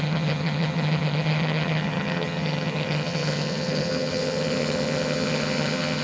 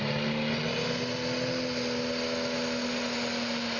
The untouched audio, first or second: second